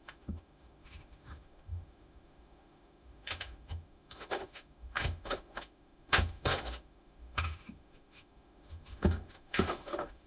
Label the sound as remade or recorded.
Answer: remade